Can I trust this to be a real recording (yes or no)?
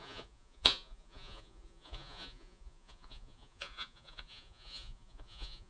no